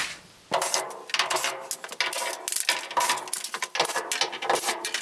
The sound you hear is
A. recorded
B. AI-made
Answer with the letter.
A